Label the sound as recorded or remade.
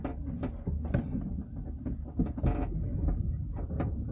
recorded